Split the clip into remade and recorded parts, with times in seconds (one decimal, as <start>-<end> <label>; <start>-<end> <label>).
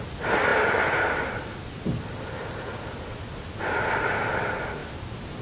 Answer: 0.0-5.4 recorded